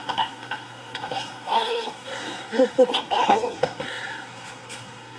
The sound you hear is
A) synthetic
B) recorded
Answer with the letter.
A